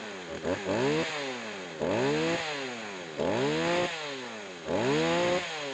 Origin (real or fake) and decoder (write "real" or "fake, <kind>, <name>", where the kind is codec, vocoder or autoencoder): real